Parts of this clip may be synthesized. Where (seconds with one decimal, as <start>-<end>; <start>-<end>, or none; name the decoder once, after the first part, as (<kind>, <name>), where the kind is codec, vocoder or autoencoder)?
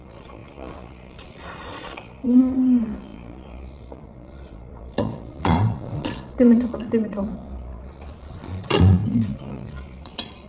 0.0-10.5 (vocoder, Vocos)